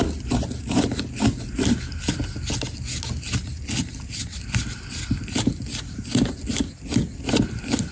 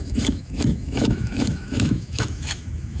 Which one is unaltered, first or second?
first